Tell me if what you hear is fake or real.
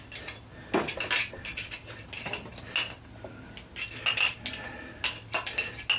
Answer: real